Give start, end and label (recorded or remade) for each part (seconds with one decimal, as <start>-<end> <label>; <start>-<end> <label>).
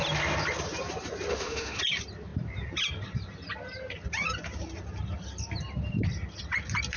0.0-1.3 recorded; 1.3-1.8 remade; 1.8-7.0 recorded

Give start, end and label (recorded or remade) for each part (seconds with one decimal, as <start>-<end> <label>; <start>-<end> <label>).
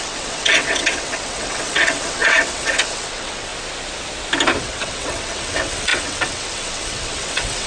0.0-3.5 remade; 3.5-4.6 recorded; 4.6-7.7 remade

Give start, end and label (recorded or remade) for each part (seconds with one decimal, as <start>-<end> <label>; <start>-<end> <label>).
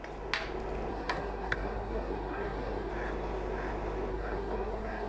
0.0-0.9 recorded; 0.9-2.9 remade; 2.9-4.1 recorded; 4.1-5.1 remade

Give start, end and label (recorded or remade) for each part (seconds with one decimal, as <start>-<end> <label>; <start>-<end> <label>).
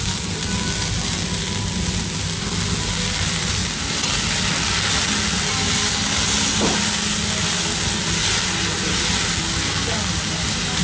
0.0-10.8 recorded